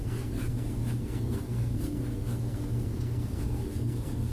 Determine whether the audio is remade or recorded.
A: remade